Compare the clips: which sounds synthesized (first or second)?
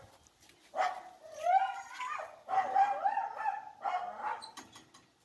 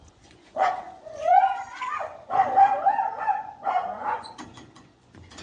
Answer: second